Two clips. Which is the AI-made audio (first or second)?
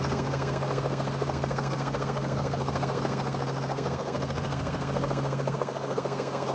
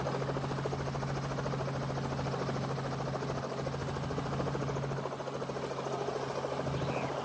first